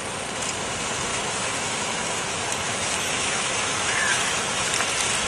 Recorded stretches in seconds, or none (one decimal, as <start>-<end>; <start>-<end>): 0.0-1.1; 4.3-5.3